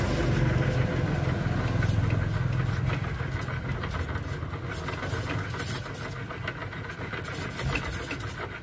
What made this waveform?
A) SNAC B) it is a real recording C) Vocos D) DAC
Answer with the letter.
B